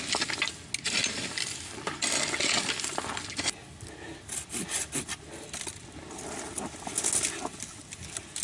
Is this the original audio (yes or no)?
yes